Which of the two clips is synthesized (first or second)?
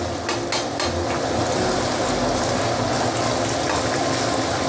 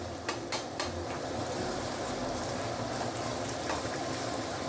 second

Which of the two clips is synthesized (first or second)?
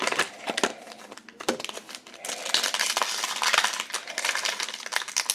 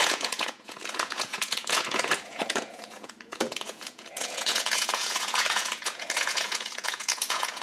second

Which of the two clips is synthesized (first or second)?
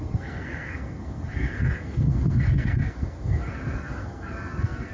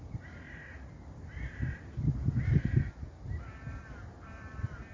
first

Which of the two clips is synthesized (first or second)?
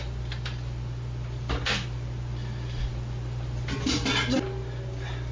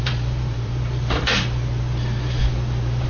second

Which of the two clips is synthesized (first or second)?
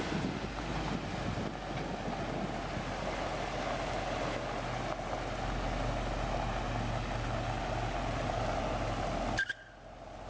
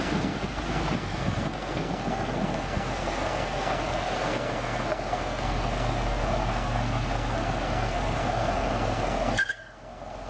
second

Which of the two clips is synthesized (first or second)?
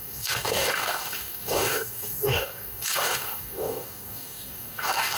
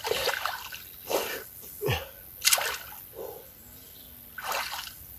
first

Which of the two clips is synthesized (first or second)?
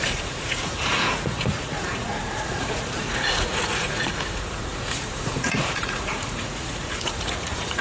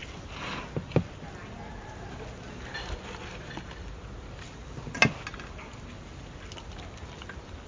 first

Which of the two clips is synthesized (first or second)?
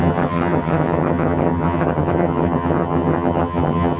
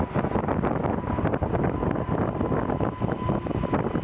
first